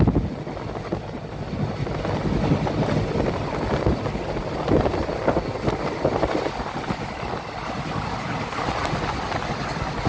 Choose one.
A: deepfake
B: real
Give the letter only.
B